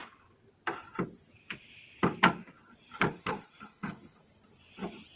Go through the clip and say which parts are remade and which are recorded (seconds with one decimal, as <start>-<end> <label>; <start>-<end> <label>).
0.0-3.1 recorded; 3.1-4.2 remade; 4.2-5.2 recorded